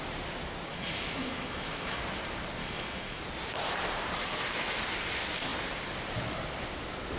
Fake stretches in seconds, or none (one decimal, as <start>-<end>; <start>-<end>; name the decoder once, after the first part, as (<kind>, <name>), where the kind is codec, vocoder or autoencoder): 0.7-2.0 (autoencoder, DAC-VAE); 2.6-3.2